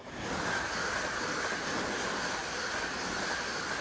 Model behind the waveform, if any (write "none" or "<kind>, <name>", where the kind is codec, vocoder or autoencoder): none